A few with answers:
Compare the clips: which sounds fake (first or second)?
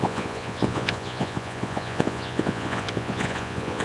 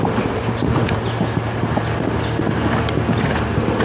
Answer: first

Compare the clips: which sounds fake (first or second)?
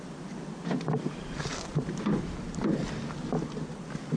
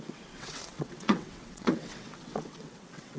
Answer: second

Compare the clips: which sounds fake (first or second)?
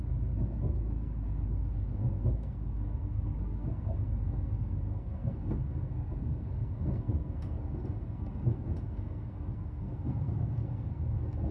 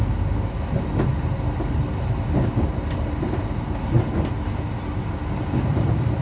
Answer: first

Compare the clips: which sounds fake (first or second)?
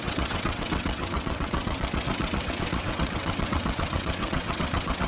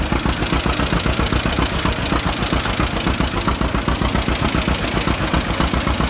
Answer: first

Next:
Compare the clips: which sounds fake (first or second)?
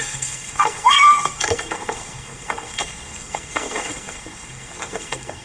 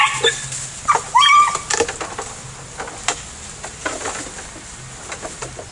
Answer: first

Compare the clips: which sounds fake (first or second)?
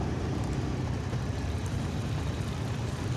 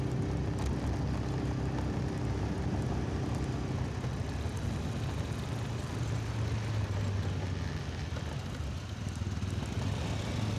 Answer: first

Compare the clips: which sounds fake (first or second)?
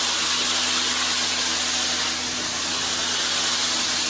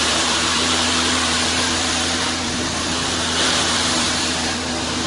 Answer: second